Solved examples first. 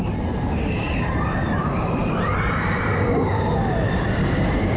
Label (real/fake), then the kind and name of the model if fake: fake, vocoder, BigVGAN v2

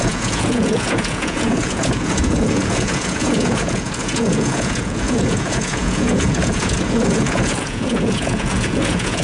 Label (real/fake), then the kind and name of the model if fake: fake, vocoder, Vocos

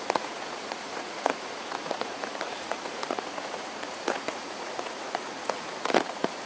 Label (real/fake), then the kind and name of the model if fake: fake, vocoder, Vocos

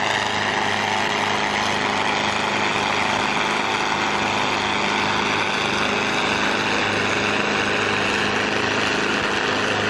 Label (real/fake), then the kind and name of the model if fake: real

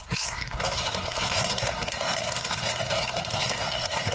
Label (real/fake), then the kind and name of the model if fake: fake, codec, SNAC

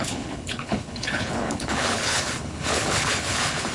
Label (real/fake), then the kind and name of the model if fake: fake, codec, HILCodec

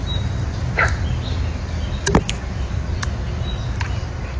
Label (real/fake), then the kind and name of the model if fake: real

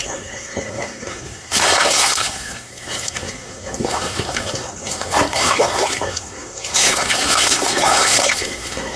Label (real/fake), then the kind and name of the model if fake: fake, codec, SNAC